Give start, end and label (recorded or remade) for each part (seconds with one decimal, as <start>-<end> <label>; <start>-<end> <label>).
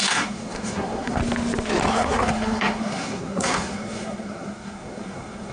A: 0.0-1.2 remade; 1.2-1.9 recorded; 1.9-5.5 remade